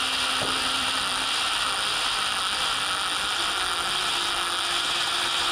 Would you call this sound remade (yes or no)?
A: no